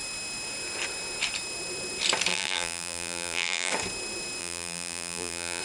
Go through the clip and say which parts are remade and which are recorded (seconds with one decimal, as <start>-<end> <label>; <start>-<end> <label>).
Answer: 0.0-2.3 recorded; 2.3-3.7 remade; 3.7-4.4 recorded; 4.4-5.6 remade